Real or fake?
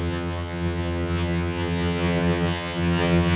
fake